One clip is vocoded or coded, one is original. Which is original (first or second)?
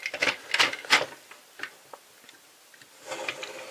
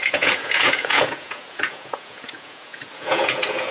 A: first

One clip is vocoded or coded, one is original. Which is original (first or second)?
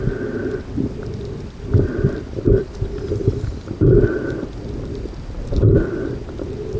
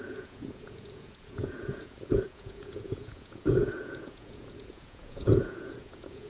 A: first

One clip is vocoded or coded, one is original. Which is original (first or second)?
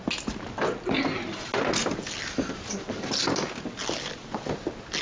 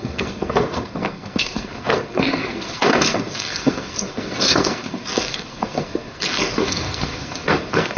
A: first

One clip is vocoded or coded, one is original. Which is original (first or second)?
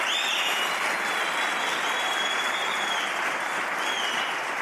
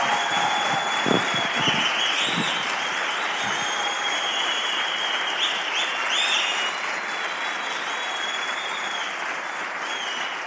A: second